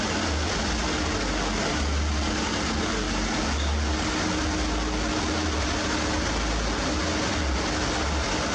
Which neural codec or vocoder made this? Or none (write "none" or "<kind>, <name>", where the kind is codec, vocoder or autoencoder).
none